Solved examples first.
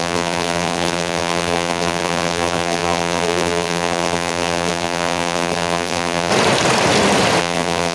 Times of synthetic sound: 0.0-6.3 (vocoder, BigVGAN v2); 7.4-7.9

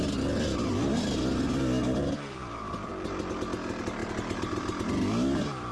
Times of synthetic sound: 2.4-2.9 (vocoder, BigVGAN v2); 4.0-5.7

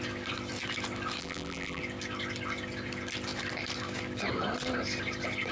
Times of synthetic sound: 1.2-1.8 (vocoder, BigVGAN v2)

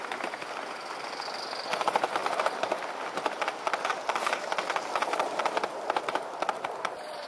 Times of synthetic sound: 2.2-3.9 (vocoder, BigVGAN v2)